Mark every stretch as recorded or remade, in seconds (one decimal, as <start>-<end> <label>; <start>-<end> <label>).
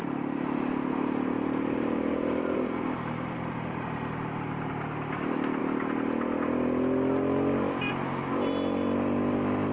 0.0-4.7 remade; 4.7-9.7 recorded